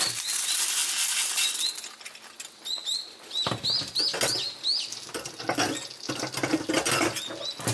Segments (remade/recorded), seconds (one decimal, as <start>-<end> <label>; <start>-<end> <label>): 0.0-7.7 recorded